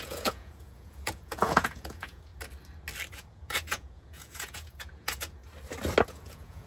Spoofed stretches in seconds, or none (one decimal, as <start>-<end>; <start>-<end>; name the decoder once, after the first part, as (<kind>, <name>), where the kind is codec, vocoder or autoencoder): 0.0-2.3 (vocoder, Vocos); 3.1-5.4; 6.1-6.7